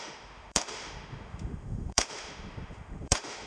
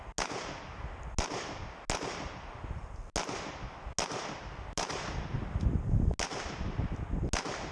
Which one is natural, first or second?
second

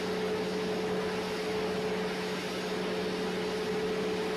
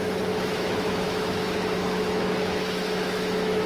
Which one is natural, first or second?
first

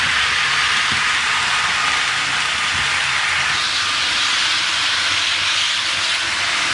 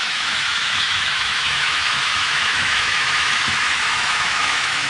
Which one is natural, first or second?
first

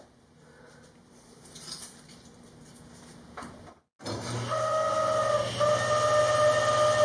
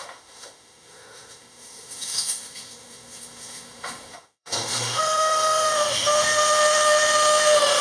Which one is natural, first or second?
first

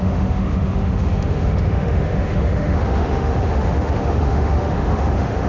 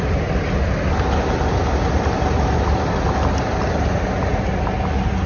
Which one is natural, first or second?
second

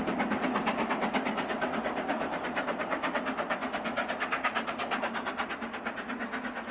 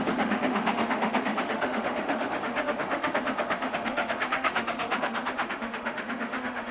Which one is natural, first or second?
first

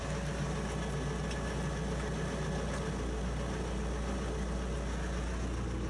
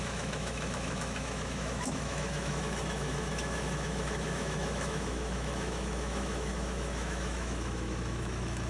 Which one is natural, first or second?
first